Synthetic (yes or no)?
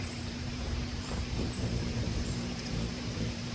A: yes